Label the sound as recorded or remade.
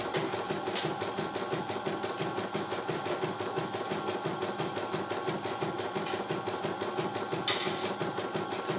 recorded